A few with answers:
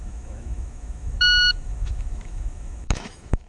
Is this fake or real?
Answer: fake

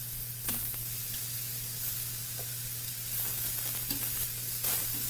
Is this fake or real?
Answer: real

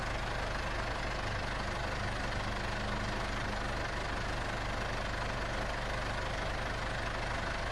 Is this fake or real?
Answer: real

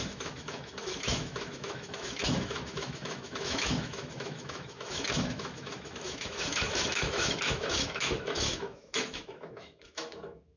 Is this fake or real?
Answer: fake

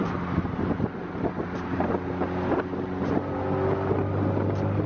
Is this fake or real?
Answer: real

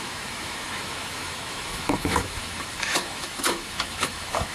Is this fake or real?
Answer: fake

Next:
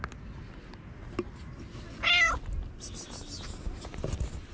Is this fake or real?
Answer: real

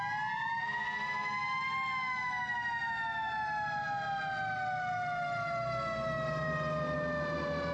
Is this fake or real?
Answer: real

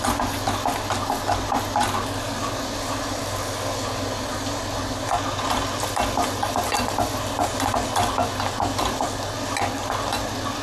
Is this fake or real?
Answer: real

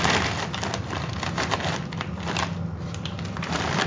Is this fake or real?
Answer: real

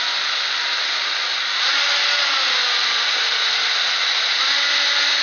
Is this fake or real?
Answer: real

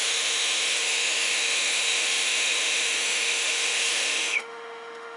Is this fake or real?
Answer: fake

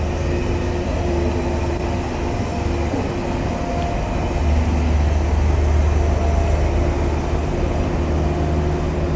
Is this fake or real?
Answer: real